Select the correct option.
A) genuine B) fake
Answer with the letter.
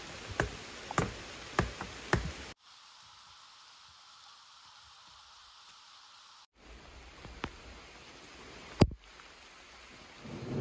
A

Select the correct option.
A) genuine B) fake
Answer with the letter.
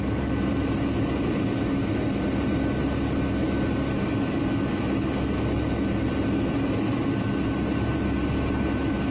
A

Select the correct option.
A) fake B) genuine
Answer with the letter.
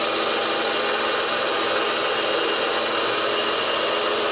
B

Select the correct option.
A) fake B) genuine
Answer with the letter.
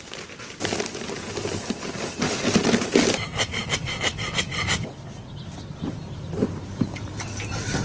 B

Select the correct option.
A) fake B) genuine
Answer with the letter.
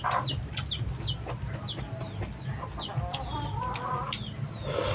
B